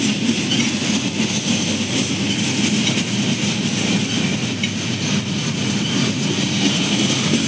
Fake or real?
real